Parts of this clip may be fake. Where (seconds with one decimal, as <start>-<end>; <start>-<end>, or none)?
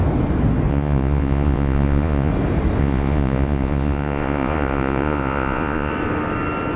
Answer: 0.7-2.3; 2.8-5.9